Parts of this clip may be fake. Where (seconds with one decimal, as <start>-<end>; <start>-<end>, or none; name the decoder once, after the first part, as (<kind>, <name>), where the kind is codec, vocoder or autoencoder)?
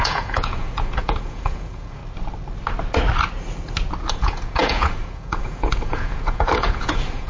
0.0-2.0 (vocoder, Vocos); 4.1-7.3